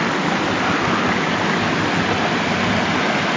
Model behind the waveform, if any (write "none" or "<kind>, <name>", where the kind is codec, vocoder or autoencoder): none